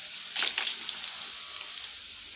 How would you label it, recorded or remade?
recorded